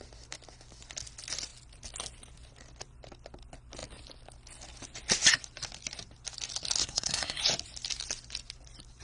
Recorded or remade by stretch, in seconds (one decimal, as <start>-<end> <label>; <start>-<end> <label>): 0.0-6.8 recorded; 6.8-7.4 remade; 7.4-9.0 recorded